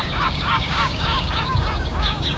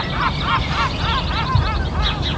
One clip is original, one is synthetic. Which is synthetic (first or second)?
first